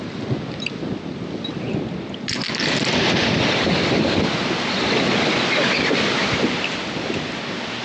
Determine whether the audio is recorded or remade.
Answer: recorded